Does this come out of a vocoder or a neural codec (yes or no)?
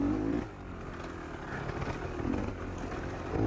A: no